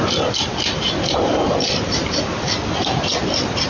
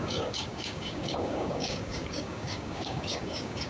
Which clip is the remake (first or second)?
second